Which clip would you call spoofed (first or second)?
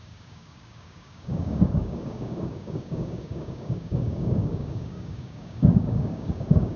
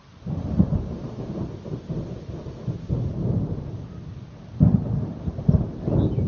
first